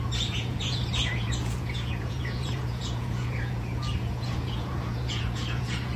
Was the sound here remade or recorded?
remade